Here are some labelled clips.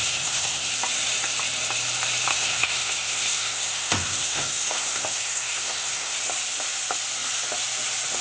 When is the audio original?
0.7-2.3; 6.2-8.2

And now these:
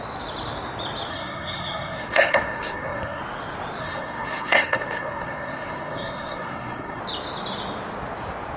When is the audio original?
0.0-1.1; 3.2-3.8; 7.0-8.6